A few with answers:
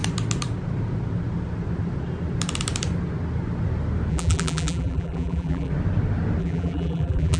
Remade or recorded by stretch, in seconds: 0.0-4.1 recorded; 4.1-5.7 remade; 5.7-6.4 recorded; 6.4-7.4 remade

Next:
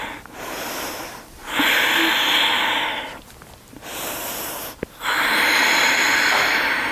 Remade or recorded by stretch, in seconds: 0.0-6.9 recorded

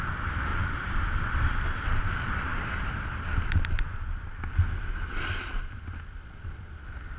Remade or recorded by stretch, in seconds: 0.0-0.5 recorded; 0.5-2.0 remade; 2.0-7.2 recorded

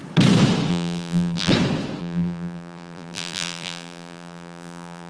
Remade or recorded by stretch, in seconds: 0.0-0.7 recorded; 0.7-1.5 remade; 1.5-2.0 recorded; 2.0-5.1 remade

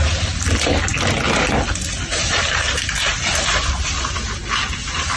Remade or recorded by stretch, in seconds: 0.0-2.1 recorded; 2.1-3.3 remade; 3.3-5.2 recorded